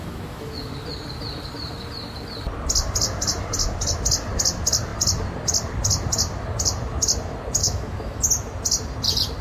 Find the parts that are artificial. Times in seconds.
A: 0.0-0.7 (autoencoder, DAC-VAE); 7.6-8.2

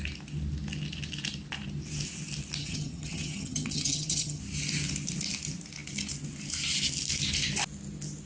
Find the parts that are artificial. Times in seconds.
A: 2.6-4.4 (vocoder, HiFi-GAN)

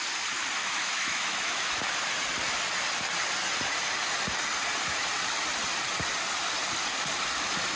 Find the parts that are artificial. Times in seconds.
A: 0.6-1.7 (autoencoder, DAC-VAE)